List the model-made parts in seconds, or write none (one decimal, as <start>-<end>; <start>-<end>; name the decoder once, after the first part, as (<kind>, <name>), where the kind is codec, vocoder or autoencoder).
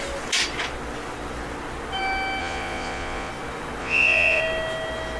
2.4-3.3 (vocoder, Vocos); 3.8-4.4